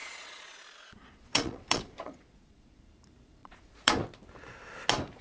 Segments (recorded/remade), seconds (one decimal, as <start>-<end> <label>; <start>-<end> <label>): 0.0-2.8 remade; 2.8-3.4 recorded; 3.4-3.9 remade; 3.9-5.2 recorded